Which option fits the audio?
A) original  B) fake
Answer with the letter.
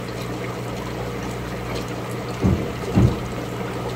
A